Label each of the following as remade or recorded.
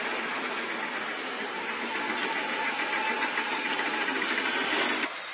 recorded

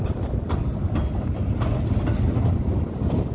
recorded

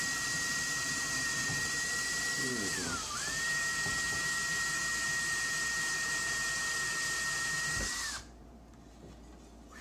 remade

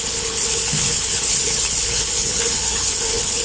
remade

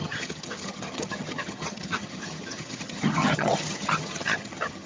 remade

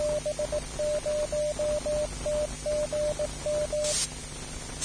recorded